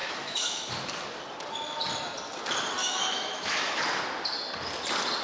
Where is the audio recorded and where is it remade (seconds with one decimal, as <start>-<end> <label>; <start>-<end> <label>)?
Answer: 0.0-0.7 remade; 0.7-2.8 recorded; 2.8-3.8 remade; 3.8-5.2 recorded